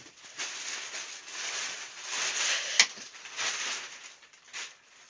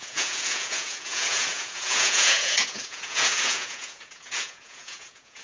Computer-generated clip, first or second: second